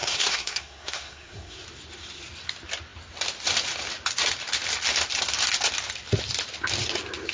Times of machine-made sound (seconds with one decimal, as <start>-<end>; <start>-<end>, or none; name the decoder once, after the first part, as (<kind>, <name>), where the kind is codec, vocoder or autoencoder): 0.0-1.6 (codec, SNAC)